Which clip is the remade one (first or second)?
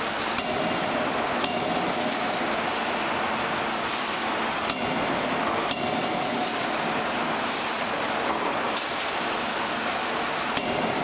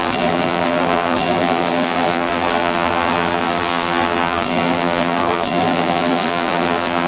second